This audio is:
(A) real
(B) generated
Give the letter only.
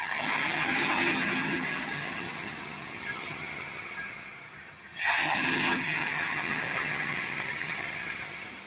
B